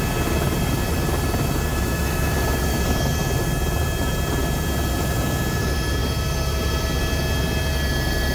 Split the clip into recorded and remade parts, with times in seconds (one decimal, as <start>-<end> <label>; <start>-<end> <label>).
0.0-1.7 recorded; 1.7-3.1 remade; 3.1-8.3 recorded